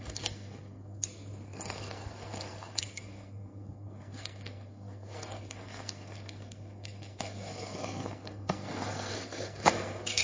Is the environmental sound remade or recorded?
remade